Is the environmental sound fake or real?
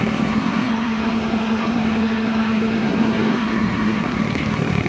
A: fake